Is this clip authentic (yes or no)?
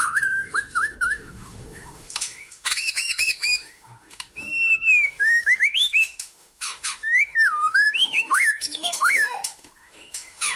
no